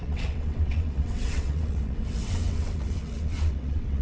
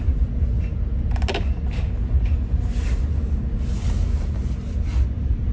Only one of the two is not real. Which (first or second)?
first